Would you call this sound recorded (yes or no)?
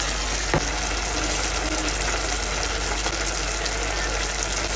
yes